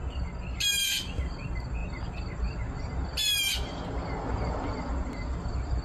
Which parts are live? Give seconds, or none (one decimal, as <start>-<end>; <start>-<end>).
0.0-5.8